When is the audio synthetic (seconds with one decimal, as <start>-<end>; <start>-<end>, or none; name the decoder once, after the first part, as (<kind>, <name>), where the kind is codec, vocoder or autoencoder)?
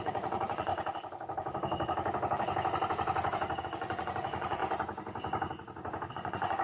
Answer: 0.0-0.7 (vocoder, Vocos); 3.6-4.6; 6.1-6.6